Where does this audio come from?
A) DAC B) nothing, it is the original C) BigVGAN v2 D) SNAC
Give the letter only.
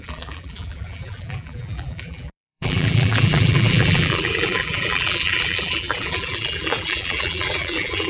C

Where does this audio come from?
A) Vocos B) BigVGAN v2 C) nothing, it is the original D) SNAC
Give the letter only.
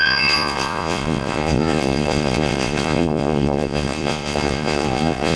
A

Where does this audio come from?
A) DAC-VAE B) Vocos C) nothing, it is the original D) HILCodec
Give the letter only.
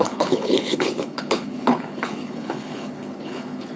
D